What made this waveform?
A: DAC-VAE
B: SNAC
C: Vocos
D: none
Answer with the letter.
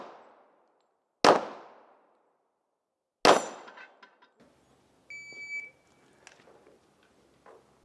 D